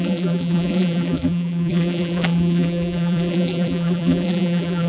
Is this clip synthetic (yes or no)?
yes